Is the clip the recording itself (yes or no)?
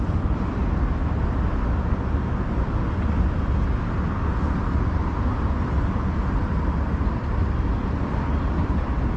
yes